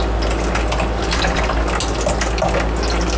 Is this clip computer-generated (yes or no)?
no